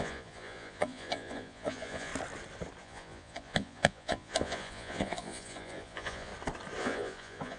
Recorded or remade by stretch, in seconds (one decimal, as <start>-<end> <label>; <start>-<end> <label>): 0.0-2.1 remade; 2.1-2.8 recorded; 2.8-6.3 remade; 6.3-6.8 recorded; 6.8-7.6 remade